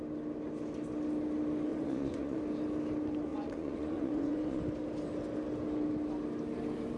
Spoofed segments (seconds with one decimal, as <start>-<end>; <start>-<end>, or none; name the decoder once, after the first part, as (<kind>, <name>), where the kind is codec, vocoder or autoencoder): 1.7-2.4 (vocoder, Vocos); 3.3-4.6